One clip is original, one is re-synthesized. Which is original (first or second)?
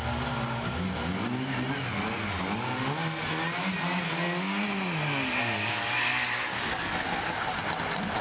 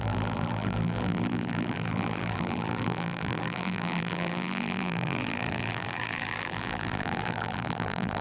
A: first